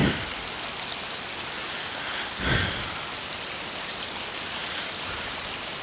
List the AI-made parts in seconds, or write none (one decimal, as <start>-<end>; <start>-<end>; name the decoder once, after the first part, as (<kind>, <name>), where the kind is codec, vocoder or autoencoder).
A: none